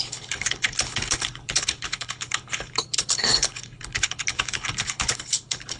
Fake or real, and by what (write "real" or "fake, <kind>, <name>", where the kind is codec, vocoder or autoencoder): fake, codec, HILCodec